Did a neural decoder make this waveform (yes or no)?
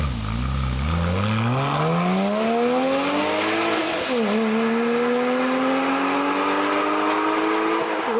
no